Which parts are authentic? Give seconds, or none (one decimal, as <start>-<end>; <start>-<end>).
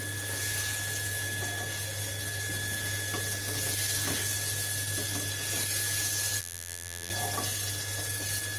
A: 0.0-6.4; 7.1-8.6